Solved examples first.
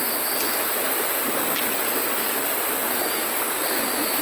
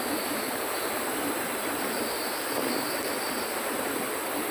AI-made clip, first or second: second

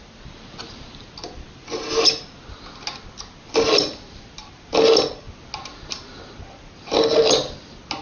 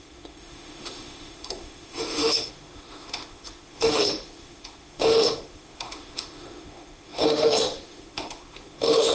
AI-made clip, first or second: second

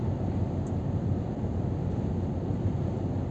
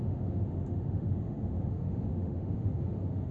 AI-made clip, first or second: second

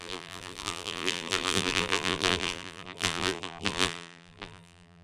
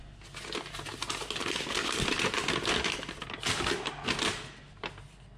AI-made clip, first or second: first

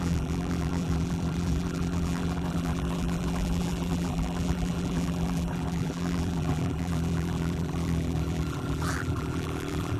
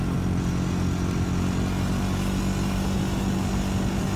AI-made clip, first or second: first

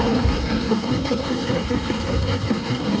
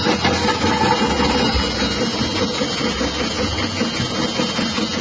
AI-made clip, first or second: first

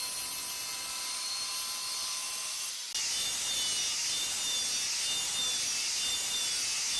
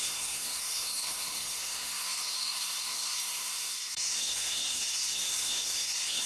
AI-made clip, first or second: second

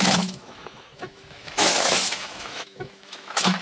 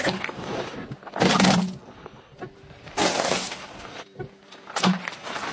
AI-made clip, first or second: first